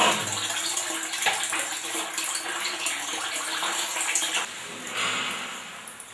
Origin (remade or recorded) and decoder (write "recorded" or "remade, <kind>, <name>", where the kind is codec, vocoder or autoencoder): recorded